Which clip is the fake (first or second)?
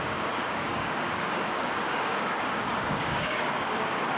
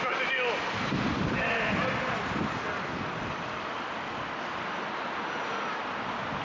first